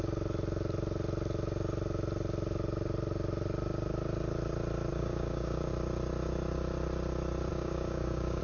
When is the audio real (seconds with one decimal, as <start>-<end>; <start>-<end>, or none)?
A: 0.0-4.9; 5.7-7.5